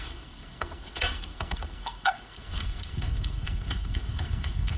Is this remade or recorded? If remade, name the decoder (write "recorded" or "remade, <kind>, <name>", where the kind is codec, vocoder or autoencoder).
remade, codec, SNAC